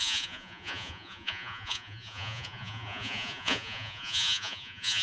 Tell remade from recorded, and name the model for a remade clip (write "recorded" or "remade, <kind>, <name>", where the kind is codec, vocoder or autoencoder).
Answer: remade, vocoder, Vocos